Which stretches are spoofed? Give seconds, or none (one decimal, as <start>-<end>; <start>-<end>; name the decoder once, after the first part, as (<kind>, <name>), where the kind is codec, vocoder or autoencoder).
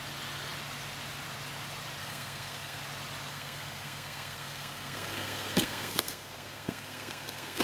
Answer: 2.0-2.8 (codec, SNAC); 3.3-7.6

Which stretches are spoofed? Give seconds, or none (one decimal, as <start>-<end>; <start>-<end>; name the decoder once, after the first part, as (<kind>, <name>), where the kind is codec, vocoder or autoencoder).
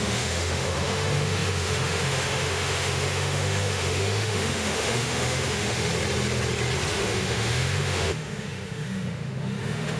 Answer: 0.0-5.9 (autoencoder, DAC-VAE); 6.9-10.0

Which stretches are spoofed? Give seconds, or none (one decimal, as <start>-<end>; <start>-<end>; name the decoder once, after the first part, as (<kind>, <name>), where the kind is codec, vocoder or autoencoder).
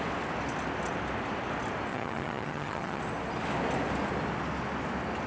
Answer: 1.9-3.0 (vocoder, HiFi-GAN)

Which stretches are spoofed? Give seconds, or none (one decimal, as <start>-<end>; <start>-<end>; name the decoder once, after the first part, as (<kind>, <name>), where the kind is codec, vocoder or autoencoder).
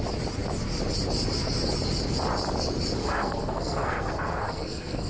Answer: 3.0-5.1 (codec, SNAC)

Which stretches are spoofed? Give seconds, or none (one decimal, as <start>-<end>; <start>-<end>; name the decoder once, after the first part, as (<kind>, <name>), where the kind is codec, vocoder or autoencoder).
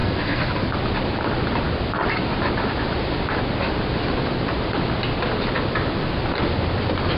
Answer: 0.0-0.7 (codec, SNAC)